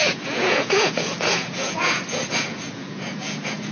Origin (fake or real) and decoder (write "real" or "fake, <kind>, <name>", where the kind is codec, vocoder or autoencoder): fake, vocoder, Vocos